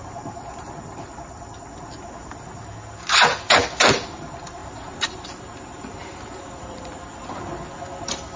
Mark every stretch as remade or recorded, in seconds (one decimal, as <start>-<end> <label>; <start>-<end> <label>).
0.0-4.6 recorded; 4.6-7.3 remade; 7.3-8.4 recorded